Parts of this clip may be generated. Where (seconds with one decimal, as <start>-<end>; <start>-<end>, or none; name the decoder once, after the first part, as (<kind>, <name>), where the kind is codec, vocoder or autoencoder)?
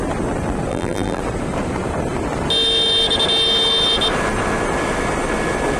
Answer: 0.7-1.2 (vocoder, BigVGAN v2)